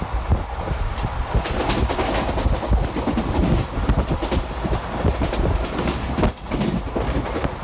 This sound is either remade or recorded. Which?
recorded